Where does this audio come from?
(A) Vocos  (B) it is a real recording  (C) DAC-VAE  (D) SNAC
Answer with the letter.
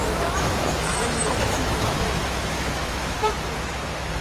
C